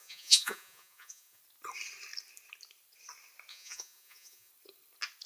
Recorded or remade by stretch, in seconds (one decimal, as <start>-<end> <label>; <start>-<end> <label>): 0.0-1.4 remade; 1.4-3.5 recorded; 3.5-4.5 remade; 4.5-5.3 recorded